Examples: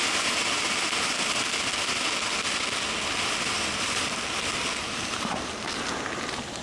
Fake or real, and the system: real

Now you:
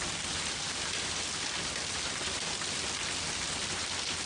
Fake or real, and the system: real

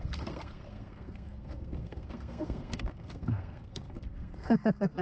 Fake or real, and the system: fake, codec, SNAC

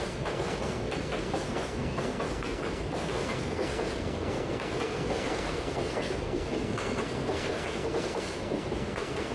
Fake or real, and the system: fake, codec, SNAC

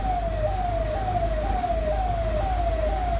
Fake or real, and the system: real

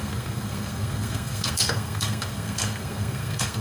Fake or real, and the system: fake, codec, SNAC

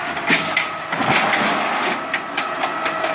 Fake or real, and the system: real